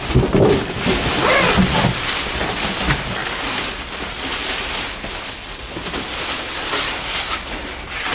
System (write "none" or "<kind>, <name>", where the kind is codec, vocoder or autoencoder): vocoder, BigVGAN v2